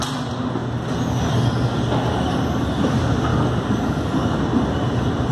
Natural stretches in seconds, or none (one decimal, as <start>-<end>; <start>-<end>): 0.0-3.3; 4.4-5.3